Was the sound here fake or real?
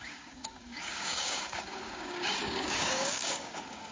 fake